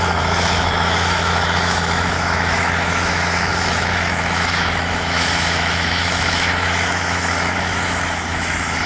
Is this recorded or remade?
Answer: remade